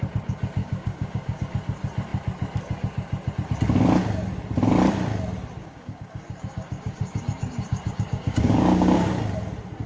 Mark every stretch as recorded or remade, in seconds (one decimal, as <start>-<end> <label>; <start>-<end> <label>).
0.0-0.6 recorded; 0.6-1.4 remade; 1.4-5.6 recorded; 5.6-9.1 remade; 9.1-9.9 recorded